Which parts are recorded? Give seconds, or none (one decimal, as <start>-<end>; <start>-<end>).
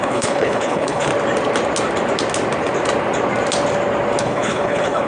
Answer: 1.1-4.2